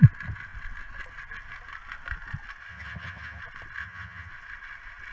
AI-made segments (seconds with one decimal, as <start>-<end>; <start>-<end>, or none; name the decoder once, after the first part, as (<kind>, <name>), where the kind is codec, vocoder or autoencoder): 2.7-3.4 (vocoder, HiFi-GAN); 3.8-4.3